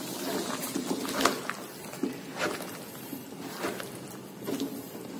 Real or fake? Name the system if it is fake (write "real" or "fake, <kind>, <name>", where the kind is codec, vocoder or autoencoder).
real